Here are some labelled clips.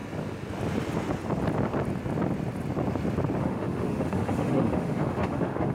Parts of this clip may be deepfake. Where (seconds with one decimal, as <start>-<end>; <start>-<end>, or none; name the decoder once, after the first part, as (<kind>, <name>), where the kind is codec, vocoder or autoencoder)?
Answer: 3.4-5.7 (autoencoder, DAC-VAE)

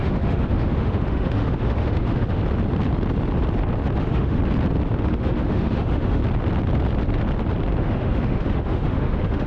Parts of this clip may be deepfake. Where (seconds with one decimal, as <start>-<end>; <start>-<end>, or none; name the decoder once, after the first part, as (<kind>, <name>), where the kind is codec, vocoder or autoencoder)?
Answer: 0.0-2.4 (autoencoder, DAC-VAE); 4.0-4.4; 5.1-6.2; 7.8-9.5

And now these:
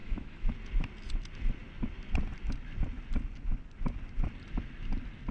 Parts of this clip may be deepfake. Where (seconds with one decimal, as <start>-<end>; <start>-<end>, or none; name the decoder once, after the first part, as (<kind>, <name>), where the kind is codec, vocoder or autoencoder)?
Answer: 0.0-0.5 (autoencoder, DAC-VAE)